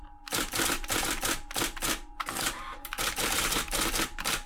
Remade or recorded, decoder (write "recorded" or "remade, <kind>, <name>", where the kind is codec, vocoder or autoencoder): remade, vocoder, BigVGAN v2